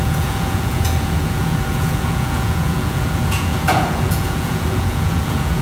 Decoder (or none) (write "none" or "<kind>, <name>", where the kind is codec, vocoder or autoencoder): vocoder, Vocos